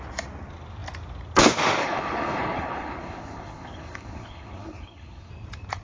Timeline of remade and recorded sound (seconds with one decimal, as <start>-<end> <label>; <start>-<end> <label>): 0.0-1.8 recorded; 1.8-5.3 remade; 5.3-5.8 recorded